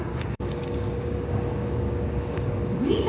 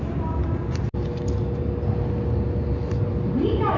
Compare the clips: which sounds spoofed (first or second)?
first